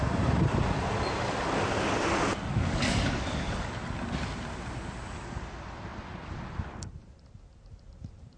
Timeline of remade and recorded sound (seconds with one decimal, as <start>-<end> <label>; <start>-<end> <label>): 0.0-2.5 recorded; 2.5-3.7 remade; 3.7-8.4 recorded